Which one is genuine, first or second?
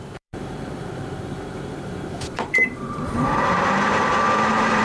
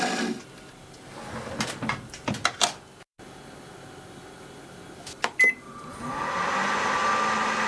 second